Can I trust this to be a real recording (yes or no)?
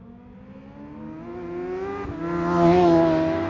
yes